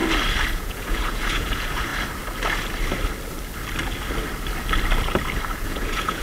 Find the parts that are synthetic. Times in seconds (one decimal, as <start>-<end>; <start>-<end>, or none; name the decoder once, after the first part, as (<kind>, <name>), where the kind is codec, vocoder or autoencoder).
0.5-1.9 (vocoder, Vocos); 5.6-6.2